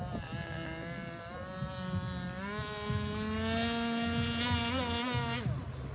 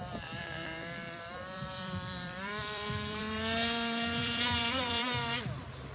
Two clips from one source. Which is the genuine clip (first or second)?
first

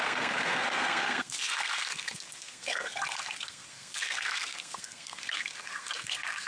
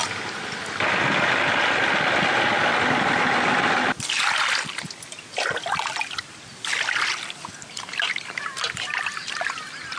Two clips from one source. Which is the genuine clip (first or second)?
second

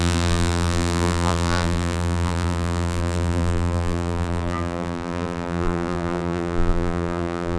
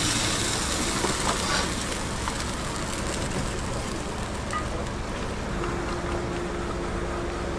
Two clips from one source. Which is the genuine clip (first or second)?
second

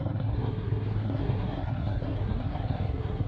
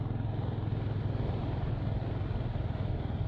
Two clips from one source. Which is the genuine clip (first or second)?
second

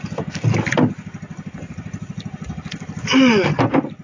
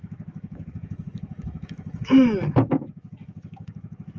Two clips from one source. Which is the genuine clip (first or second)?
first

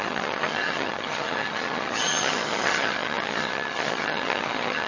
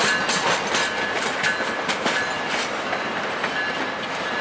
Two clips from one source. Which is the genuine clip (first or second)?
second